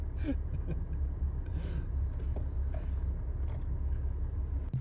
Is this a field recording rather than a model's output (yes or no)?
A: yes